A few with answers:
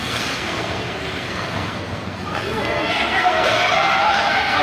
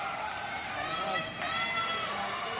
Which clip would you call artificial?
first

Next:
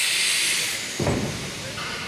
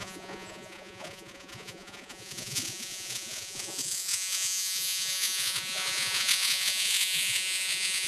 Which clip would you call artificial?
second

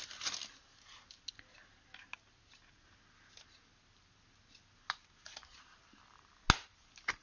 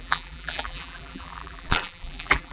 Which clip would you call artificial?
second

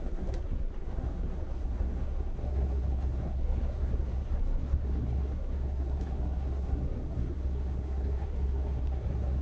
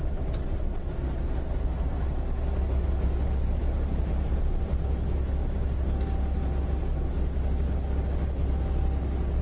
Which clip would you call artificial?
first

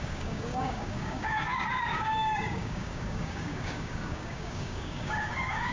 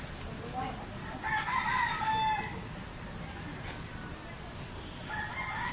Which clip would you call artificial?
first